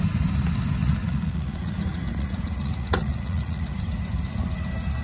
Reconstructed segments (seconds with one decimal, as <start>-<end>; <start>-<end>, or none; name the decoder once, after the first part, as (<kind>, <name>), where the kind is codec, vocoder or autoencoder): 0.8-3.8 (vocoder, Vocos)